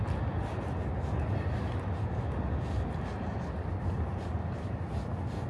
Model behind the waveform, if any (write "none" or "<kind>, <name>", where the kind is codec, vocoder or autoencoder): none